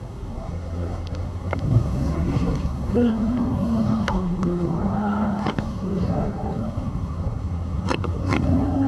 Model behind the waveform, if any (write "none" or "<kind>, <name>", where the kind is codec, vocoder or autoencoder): codec, SNAC